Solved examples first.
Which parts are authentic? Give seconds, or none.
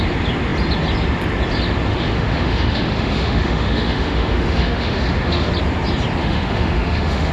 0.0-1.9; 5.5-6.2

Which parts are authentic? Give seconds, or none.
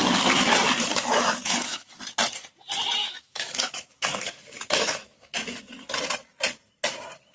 0.0-0.9; 2.0-3.0; 5.6-7.3